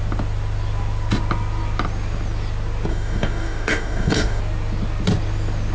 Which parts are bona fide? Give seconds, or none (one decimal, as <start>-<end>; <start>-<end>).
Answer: 0.0-2.9; 4.4-5.7